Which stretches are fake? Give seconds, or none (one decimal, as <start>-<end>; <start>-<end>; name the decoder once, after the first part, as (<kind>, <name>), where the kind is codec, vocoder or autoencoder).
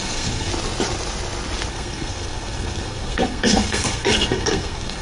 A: 0.0-0.5 (codec, SNAC); 1.7-5.0